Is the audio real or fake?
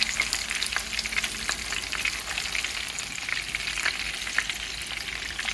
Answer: real